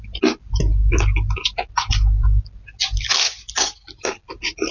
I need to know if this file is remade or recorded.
recorded